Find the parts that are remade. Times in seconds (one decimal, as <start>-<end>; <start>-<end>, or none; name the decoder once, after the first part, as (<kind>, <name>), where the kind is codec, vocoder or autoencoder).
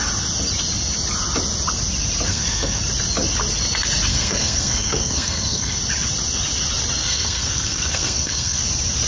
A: 2.3-2.8 (codec, SNAC); 4.1-5.8; 7.0-8.6